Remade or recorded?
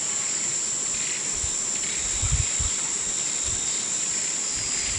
recorded